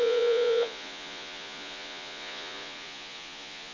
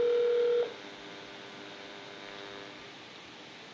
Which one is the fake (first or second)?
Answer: first